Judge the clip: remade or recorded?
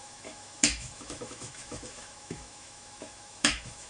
remade